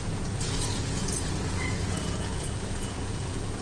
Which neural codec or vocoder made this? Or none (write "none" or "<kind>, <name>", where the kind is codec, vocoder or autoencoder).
vocoder, Vocos